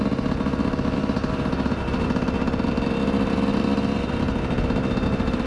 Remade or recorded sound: recorded